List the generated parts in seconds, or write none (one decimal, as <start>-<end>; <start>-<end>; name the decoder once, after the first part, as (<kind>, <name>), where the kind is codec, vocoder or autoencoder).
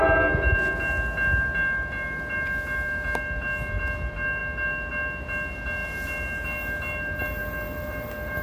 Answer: none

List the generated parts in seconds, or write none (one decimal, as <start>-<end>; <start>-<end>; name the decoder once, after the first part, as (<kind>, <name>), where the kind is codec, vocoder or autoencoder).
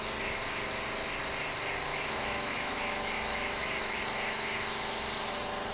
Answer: 1.9-4.0 (autoencoder, DAC-VAE)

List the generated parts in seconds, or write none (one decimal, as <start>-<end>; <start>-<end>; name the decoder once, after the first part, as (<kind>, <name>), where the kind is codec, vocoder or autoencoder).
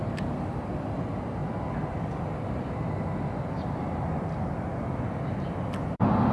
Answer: none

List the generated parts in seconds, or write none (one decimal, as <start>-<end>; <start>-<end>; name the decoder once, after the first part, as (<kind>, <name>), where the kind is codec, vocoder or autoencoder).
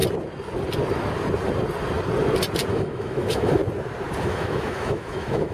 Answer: 2.7-3.6 (autoencoder, DAC-VAE); 4.2-5.5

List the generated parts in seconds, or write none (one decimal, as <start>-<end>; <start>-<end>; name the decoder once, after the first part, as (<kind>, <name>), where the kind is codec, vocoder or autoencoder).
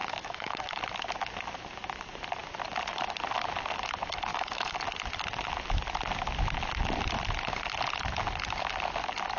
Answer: 0.0-0.8 (autoencoder, DAC-VAE); 4.3-4.8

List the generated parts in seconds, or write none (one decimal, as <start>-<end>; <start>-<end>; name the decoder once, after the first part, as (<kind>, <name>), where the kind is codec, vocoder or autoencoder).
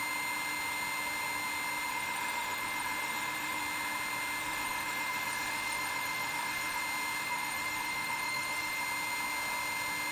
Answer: 1.9-3.6 (autoencoder, DAC-VAE); 4.4-6.8; 7.2-8.8